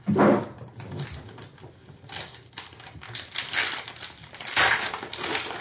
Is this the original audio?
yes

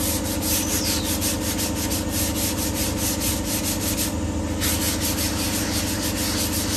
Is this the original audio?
yes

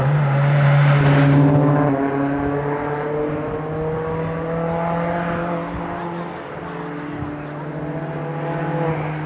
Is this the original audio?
yes